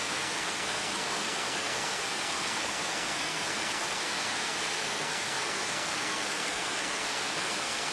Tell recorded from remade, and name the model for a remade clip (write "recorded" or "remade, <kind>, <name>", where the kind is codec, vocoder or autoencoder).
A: remade, codec, SNAC